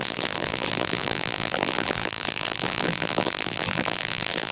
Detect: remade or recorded remade